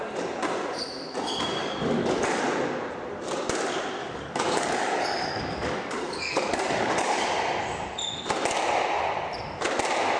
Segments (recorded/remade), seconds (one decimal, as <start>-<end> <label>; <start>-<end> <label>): 0.0-1.6 recorded; 1.6-2.4 remade; 2.4-4.0 recorded; 4.0-7.2 remade; 7.2-10.2 recorded